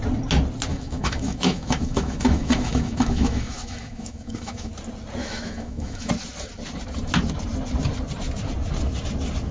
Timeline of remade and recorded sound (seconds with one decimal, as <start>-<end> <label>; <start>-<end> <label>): 0.0-0.7 recorded; 0.7-4.7 remade; 4.7-5.2 recorded; 5.2-6.1 remade; 6.1-9.5 recorded